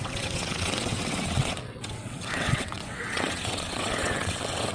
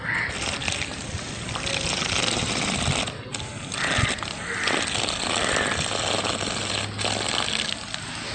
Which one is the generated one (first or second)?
first